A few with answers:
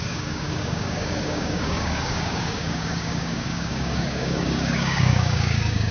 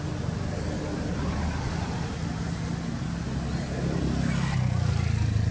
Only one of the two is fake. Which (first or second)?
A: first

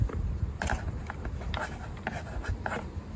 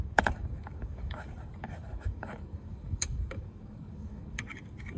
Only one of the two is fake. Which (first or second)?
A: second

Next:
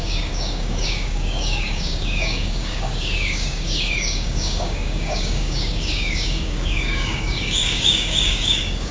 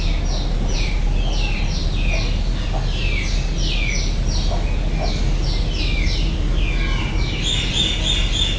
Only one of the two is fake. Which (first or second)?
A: first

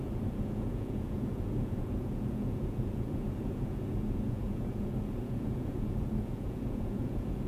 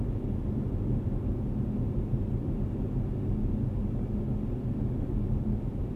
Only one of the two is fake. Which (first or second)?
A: first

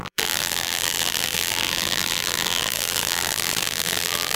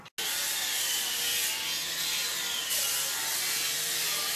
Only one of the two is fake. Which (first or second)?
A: first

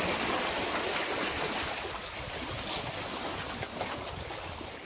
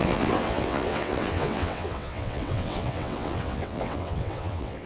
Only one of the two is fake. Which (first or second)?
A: second